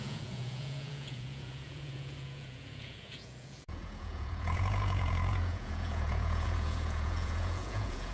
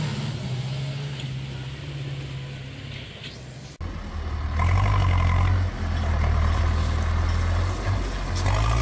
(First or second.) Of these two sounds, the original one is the second